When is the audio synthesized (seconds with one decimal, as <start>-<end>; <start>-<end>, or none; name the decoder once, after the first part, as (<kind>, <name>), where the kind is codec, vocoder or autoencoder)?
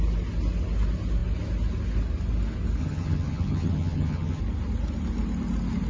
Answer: 2.8-4.4 (vocoder, HiFi-GAN)